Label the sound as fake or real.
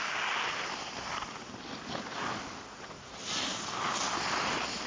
real